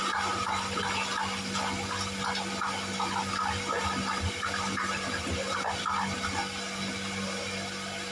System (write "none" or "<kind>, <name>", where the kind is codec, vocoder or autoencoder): none